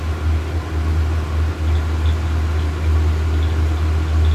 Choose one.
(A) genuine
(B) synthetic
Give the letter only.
A